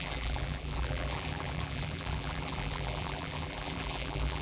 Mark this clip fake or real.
fake